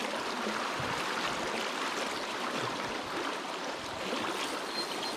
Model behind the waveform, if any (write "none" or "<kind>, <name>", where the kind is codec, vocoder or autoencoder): none